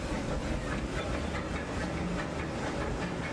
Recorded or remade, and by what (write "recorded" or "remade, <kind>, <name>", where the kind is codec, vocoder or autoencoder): recorded